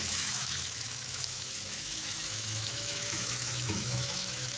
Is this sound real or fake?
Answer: fake